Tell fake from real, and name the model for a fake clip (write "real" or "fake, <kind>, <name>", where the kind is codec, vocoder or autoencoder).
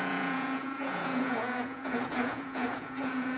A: fake, vocoder, Vocos